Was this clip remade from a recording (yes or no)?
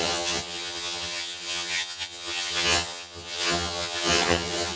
yes